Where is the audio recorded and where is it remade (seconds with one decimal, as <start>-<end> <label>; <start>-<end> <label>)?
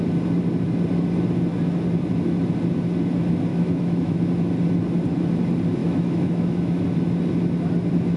0.0-3.5 recorded; 3.5-4.2 remade; 4.2-5.8 recorded; 5.8-6.8 remade; 6.8-8.2 recorded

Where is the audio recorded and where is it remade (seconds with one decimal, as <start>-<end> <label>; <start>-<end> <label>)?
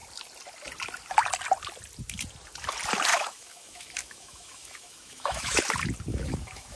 0.0-3.1 recorded; 3.1-5.6 remade; 5.6-6.1 recorded; 6.1-6.8 remade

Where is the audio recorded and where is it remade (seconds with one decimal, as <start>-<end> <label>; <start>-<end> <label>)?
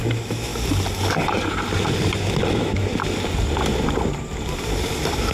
0.0-0.5 remade; 0.5-2.5 recorded; 2.5-2.9 remade; 2.9-5.3 recorded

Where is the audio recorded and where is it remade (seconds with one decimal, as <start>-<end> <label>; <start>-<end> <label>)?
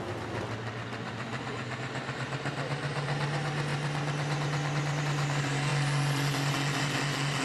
0.0-7.4 recorded